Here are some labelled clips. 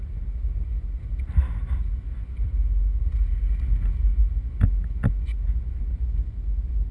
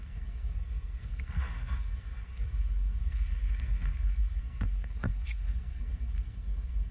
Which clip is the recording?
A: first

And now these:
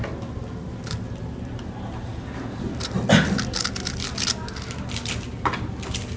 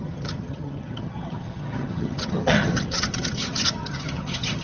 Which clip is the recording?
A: first